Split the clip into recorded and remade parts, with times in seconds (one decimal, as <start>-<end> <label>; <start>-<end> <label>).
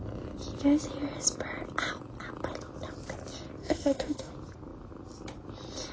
0.0-3.6 recorded; 3.6-4.3 remade; 4.3-5.9 recorded